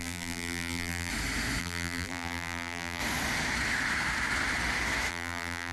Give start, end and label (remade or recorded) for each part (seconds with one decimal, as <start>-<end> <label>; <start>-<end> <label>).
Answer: 0.0-1.1 remade; 1.1-1.6 recorded; 1.6-3.0 remade; 3.0-5.1 recorded; 5.1-5.7 remade